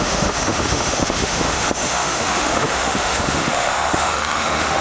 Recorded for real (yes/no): no